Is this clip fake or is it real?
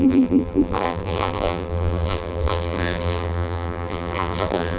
fake